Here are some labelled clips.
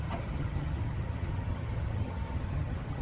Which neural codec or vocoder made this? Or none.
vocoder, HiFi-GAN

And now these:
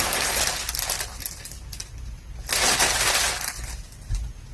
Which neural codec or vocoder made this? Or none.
none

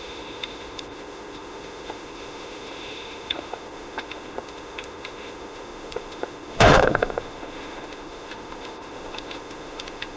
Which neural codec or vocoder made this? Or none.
autoencoder, DAC-VAE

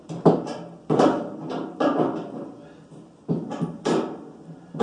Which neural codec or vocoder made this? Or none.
vocoder, BigVGAN v2